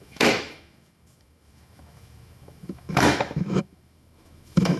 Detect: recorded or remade remade